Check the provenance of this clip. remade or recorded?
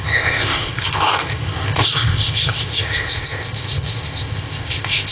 remade